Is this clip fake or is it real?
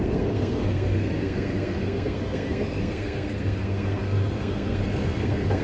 fake